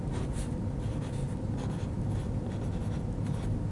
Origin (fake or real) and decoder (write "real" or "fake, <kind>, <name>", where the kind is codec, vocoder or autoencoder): real